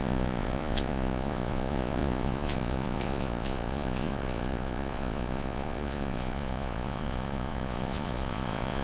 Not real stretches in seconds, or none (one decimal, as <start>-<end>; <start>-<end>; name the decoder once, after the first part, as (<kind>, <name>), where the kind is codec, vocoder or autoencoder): 0.0-8.8 (vocoder, Vocos)